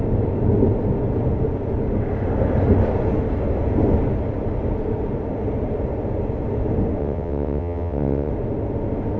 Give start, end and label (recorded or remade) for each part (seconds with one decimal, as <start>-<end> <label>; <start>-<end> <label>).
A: 0.0-7.0 recorded; 7.0-8.3 remade; 8.3-9.2 recorded